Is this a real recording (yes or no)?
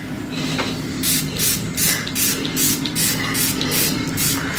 yes